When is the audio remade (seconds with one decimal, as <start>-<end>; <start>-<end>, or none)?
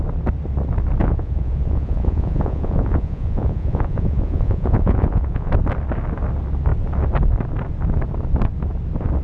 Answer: 1.0-5.5